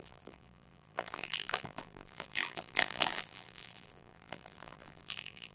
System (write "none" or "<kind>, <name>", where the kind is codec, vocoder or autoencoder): vocoder, BigVGAN v2